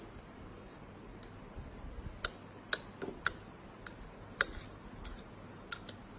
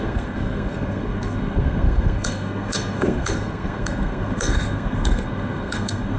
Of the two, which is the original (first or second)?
first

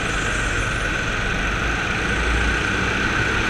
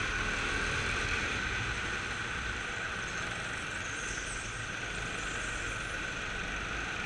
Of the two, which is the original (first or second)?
first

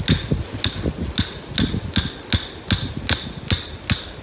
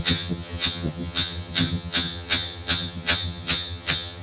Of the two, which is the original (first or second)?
first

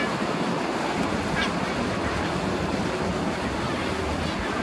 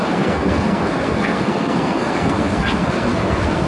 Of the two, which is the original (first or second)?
first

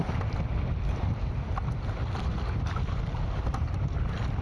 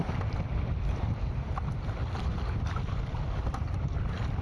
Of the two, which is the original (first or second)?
first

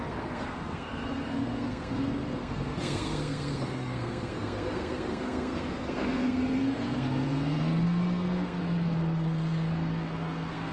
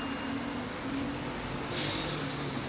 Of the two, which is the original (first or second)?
second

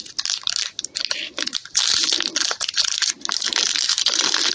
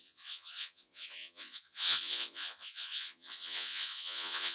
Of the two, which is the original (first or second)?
first